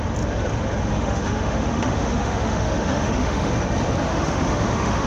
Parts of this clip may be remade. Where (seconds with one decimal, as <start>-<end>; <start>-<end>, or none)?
0.9-3.5; 4.1-5.1